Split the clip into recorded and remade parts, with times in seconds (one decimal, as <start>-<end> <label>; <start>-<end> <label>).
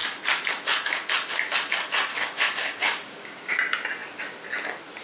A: 0.0-2.1 recorded; 2.1-3.5 remade; 3.5-5.0 recorded